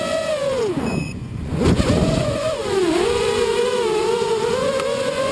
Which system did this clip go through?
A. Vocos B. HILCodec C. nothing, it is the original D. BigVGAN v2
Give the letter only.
A